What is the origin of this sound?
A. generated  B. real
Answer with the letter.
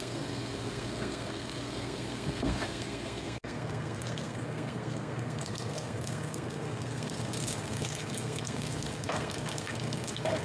A